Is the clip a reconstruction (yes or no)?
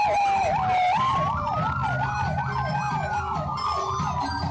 no